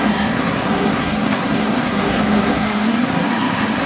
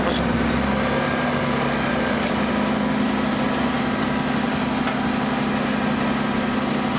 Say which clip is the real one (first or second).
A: second